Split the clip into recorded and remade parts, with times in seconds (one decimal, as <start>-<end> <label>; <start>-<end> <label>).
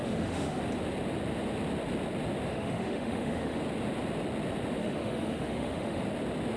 0.0-0.6 remade; 0.6-2.5 recorded; 2.5-3.6 remade; 3.6-4.8 recorded; 4.8-6.0 remade; 6.0-6.6 recorded